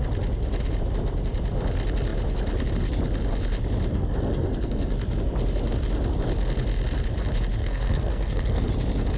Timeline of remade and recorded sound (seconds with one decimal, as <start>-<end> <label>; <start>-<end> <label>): 0.0-3.9 recorded; 3.9-4.9 remade; 4.9-7.6 recorded; 7.6-8.7 remade; 8.7-9.2 recorded